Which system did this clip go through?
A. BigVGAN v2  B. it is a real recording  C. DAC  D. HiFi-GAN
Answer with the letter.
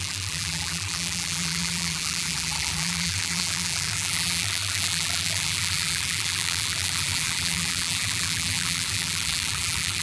A